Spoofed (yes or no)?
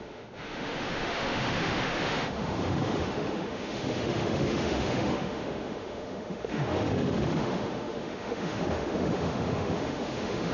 yes